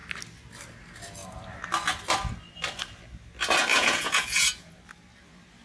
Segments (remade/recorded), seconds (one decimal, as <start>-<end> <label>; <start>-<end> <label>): 0.0-3.7 recorded; 3.7-4.7 remade; 4.7-5.6 recorded